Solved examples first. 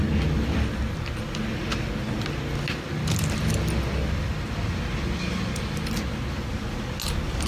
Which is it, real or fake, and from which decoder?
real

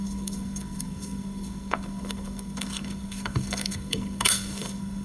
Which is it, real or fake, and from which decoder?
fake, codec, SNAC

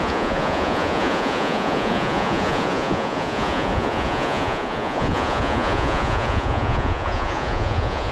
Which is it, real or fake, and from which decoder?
fake, vocoder, Vocos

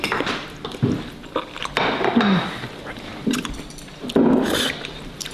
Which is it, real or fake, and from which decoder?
fake, vocoder, BigVGAN v2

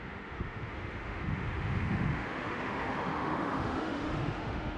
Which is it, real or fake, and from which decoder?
fake, autoencoder, DAC-VAE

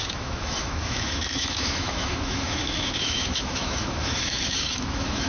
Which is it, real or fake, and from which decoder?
fake, autoencoder, DAC-VAE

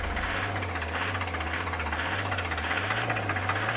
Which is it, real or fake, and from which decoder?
real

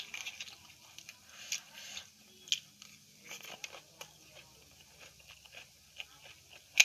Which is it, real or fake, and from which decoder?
real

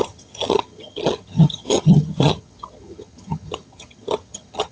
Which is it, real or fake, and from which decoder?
fake, vocoder, HiFi-GAN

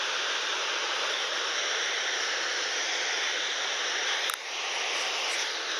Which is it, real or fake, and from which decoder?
real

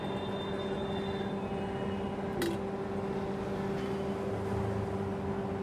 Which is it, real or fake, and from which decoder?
real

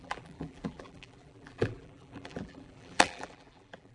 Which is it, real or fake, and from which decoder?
fake, vocoder, BigVGAN v2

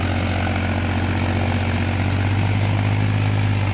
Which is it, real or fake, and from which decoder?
real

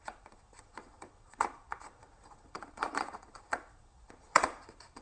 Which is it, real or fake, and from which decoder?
fake, vocoder, Vocos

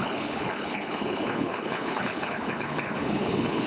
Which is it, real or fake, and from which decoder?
fake, codec, HILCodec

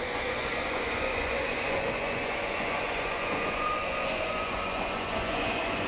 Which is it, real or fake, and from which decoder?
fake, vocoder, Vocos